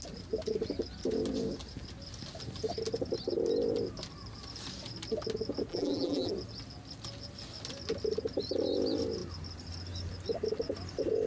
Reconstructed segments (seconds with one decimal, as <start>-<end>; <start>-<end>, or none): 5.7-6.3